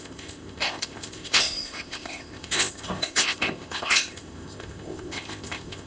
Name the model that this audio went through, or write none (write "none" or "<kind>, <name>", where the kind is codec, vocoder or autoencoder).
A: codec, ZipCodec